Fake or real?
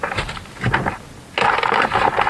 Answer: real